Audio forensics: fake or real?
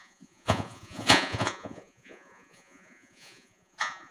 fake